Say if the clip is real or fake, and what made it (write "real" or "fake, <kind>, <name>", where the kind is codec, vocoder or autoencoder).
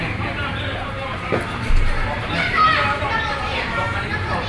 fake, vocoder, BigVGAN v2